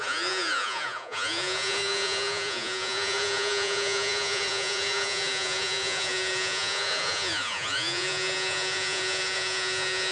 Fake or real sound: fake